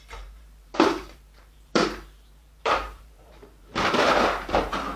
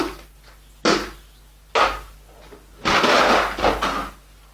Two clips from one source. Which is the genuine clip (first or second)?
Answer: second